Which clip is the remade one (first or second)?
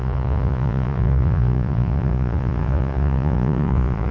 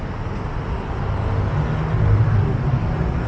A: first